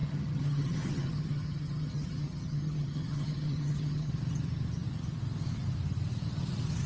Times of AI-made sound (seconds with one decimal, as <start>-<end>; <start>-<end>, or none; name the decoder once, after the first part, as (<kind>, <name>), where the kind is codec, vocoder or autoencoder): 0.0-4.1 (vocoder, HiFi-GAN)